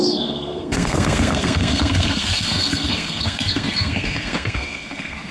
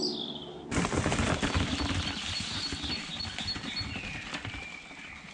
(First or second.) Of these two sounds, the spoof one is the first